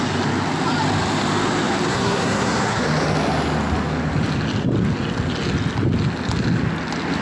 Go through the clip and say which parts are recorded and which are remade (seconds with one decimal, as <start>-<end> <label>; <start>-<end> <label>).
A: 0.0-1.9 recorded; 1.9-2.8 remade; 2.8-7.2 recorded